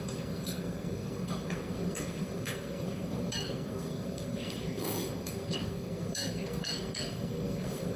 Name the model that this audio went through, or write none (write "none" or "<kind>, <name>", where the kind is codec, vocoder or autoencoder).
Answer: codec, SNAC